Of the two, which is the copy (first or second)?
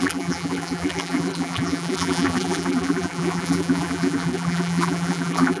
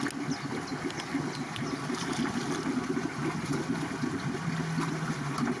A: first